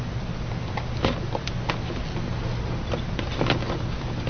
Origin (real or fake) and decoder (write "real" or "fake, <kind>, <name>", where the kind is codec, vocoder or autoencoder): real